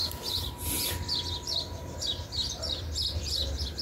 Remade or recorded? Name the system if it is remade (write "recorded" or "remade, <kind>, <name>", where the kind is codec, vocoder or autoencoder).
recorded